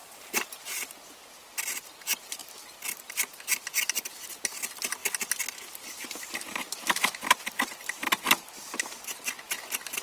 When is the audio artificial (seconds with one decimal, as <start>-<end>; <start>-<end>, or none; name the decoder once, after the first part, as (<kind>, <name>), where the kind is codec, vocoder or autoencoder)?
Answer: 0.0-0.9 (vocoder, BigVGAN v2)